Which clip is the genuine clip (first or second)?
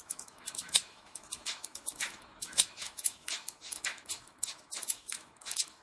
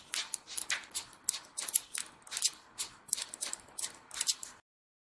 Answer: second